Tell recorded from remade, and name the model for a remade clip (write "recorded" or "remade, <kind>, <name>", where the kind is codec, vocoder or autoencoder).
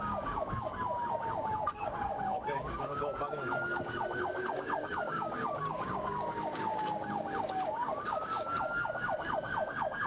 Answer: remade, codec, DAC